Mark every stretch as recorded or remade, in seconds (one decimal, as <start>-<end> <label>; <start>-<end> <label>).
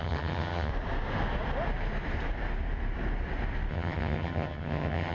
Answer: 0.0-0.7 remade; 0.7-3.7 recorded; 3.7-5.1 remade